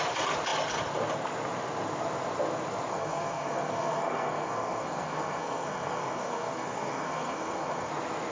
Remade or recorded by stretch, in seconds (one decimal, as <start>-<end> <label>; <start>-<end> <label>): 0.0-2.9 recorded; 2.9-7.9 remade; 7.9-8.3 recorded